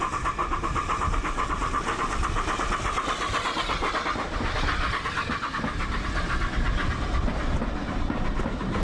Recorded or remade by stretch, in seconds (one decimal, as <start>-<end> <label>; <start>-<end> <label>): 0.0-8.8 recorded